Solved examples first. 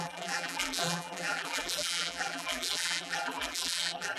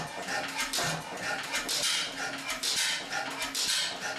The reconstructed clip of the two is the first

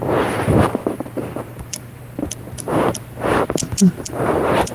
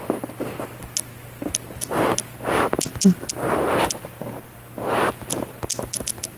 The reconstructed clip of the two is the first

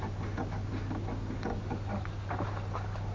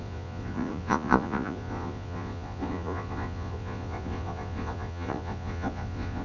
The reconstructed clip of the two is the second